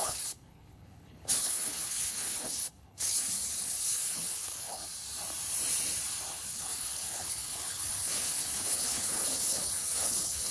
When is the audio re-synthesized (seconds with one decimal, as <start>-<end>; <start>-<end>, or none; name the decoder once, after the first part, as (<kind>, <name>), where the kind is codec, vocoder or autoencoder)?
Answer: 0.0-4.8 (codec, HILCodec); 6.3-10.5